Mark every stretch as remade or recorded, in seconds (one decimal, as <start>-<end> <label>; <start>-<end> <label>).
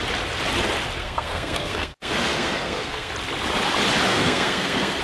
0.0-1.0 recorded; 1.0-3.1 remade; 3.1-4.1 recorded; 4.1-5.0 remade